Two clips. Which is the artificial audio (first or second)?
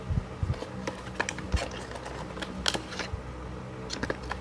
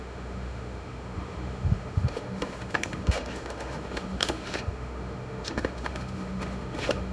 second